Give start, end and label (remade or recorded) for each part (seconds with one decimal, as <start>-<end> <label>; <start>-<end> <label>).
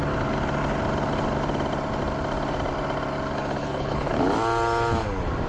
0.0-3.6 recorded; 3.6-4.2 remade; 4.2-5.5 recorded